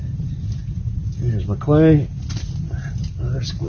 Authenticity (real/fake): real